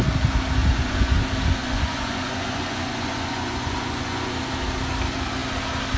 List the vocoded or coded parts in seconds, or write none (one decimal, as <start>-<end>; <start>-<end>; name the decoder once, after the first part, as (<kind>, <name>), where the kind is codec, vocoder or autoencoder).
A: 0.6-1.2 (vocoder, Vocos); 1.6-4.3